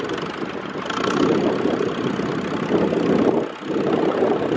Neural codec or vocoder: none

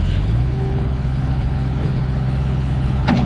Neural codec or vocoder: codec, HILCodec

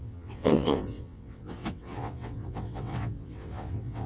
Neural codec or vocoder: vocoder, WaveNeXt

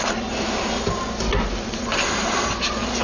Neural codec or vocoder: none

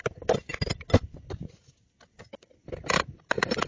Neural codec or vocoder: none